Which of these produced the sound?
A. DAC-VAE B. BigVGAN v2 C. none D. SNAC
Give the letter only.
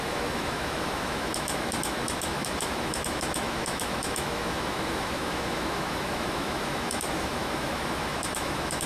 A